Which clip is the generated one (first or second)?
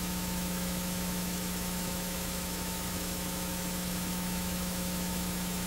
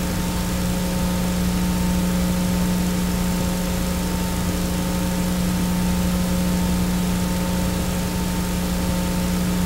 first